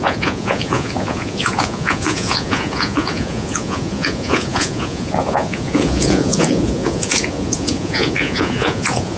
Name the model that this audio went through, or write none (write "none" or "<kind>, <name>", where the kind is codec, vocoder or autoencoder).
vocoder, Vocos